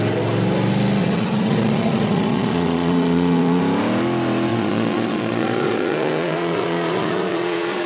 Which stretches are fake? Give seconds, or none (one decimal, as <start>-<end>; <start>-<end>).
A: 1.0-3.6; 4.5-7.9